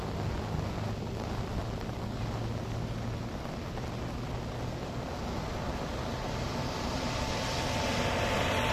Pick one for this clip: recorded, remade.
recorded